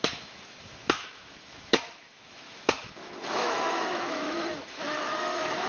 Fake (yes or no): yes